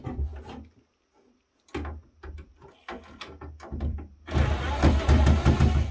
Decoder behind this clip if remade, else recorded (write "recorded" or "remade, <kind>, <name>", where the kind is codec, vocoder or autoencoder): recorded